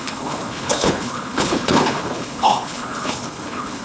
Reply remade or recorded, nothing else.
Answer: remade